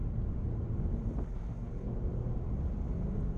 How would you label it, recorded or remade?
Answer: recorded